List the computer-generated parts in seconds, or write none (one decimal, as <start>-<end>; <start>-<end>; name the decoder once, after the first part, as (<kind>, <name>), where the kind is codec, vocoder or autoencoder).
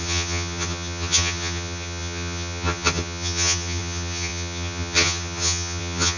0.0-6.2 (vocoder, HiFi-GAN)